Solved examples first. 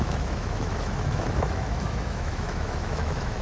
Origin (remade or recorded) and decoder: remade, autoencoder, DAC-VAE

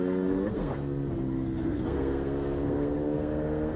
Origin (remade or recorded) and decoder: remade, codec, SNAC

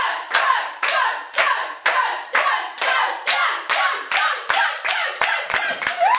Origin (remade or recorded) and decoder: remade, vocoder, BigVGAN v2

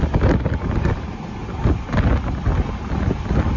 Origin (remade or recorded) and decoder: recorded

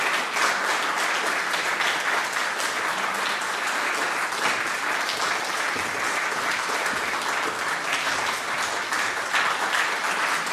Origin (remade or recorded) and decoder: recorded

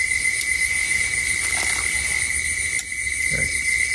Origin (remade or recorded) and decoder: recorded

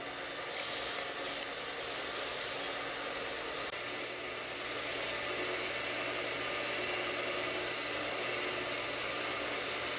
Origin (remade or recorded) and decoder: recorded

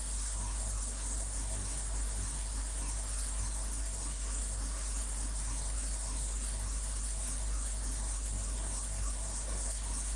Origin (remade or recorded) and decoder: remade, codec, SNAC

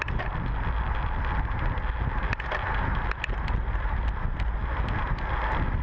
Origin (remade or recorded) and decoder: recorded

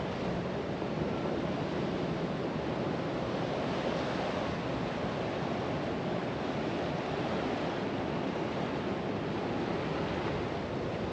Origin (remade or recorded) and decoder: recorded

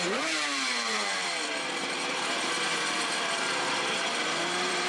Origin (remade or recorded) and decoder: remade, vocoder, BigVGAN v2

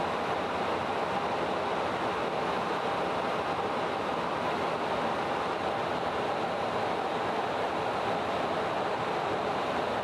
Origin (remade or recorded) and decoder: recorded